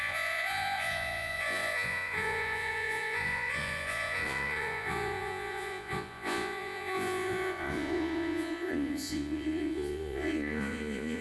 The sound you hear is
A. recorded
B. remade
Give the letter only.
B